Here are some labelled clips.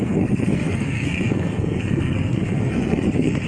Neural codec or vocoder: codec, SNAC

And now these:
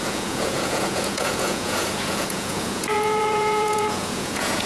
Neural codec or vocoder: vocoder, Vocos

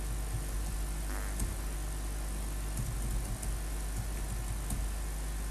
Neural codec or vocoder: none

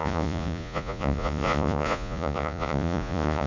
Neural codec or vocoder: vocoder, Vocos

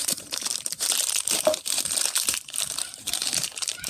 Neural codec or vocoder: vocoder, BigVGAN v2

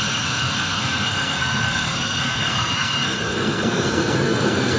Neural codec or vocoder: codec, SNAC